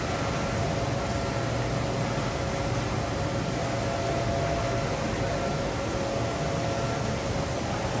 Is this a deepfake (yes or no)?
no